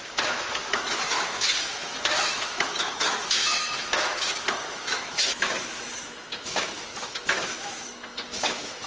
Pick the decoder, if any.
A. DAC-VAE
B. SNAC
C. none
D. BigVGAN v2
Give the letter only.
A